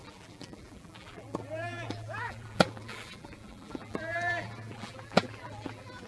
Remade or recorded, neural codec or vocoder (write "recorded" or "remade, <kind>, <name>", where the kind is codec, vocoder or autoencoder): remade, vocoder, BigVGAN v2